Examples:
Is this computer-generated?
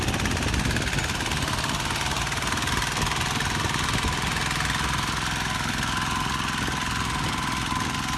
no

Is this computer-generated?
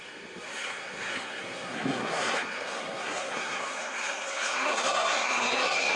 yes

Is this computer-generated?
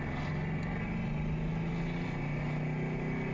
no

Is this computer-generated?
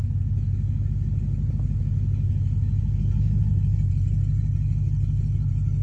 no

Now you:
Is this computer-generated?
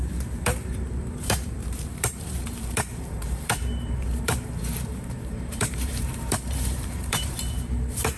yes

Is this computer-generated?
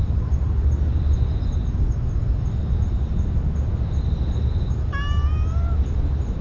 no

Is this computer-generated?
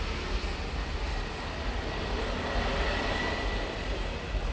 no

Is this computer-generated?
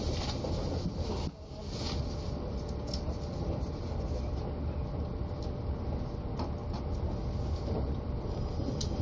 no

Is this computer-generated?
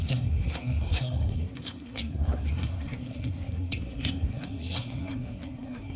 yes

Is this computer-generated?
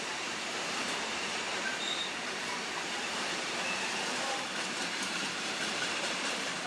yes